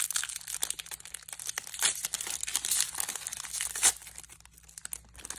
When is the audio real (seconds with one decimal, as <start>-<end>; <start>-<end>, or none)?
0.0-5.4